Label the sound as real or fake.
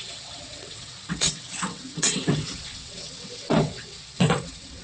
fake